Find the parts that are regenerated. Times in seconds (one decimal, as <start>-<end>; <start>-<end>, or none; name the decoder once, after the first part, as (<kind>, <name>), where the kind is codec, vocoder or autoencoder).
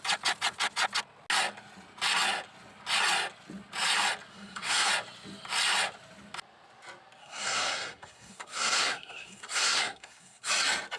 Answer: 4.3-4.9 (codec, SNAC); 7.2-10.5